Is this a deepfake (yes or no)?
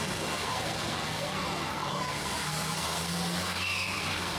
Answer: yes